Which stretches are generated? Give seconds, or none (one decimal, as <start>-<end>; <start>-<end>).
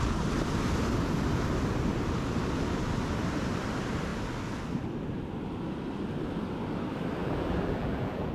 7.2-8.3